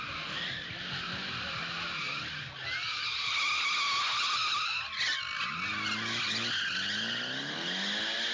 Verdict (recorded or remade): recorded